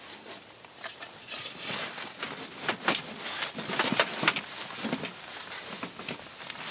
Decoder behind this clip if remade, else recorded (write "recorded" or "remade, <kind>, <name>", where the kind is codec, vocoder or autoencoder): recorded